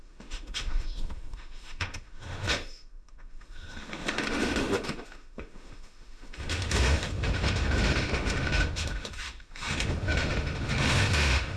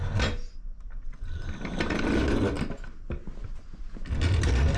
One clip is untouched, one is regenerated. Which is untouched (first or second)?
second